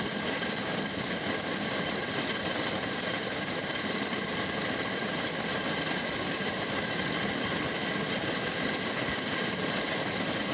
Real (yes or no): yes